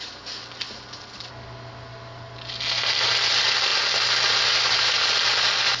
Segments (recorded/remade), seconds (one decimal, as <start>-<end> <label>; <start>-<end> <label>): 0.0-5.8 recorded